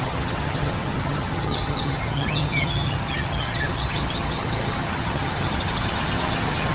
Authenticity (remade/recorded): remade